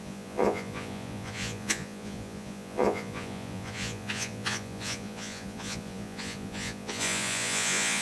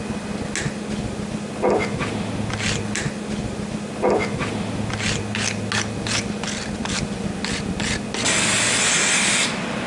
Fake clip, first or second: first